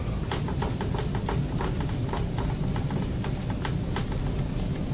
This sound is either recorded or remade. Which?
recorded